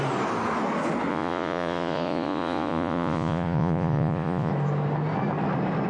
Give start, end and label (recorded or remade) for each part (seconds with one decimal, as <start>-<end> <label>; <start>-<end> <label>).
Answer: 0.0-1.1 recorded; 1.1-4.5 remade; 4.5-5.9 recorded